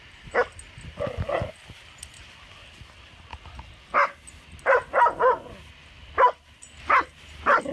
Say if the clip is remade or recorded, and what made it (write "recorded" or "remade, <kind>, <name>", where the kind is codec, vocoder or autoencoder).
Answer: recorded